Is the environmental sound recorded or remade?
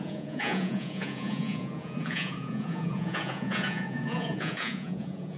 remade